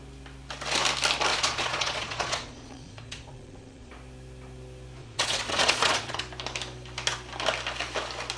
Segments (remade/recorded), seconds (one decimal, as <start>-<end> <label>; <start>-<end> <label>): 0.0-1.3 recorded; 1.3-3.9 remade; 3.9-5.0 recorded; 5.0-6.2 remade; 6.2-8.4 recorded